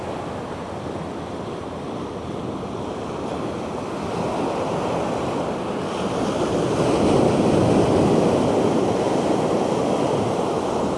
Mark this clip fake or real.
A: real